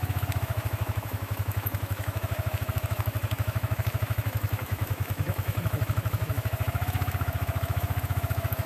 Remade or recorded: remade